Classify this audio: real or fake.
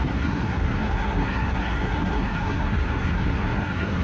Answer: fake